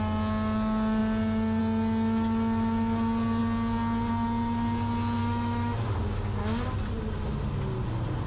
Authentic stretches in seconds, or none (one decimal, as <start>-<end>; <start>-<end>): 0.0-5.2; 5.9-8.3